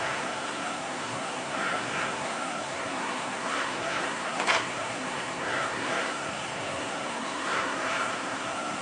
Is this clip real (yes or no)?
no